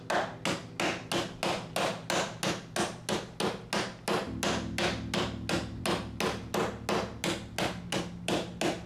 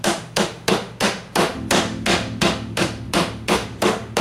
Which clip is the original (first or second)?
first